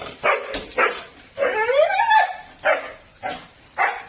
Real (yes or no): yes